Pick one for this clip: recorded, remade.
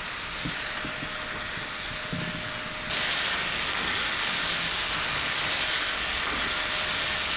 recorded